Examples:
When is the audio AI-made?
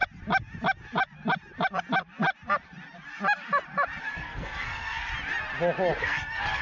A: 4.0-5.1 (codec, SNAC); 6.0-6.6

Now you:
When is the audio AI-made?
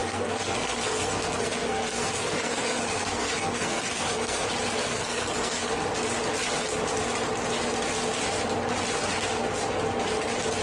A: 0.0-4.5 (codec, SNAC); 4.9-5.7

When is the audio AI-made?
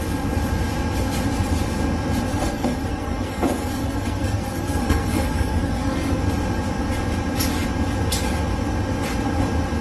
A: 2.3-6.2 (codec, SNAC)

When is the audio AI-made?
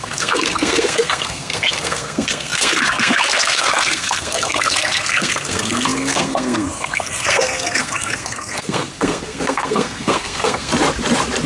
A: 0.0-10.7 (codec, SNAC)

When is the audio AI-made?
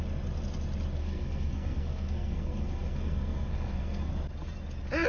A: 1.0-4.1 (codec, SNAC)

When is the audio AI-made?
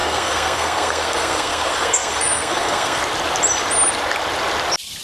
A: 0.0-3.0 (codec, SNAC)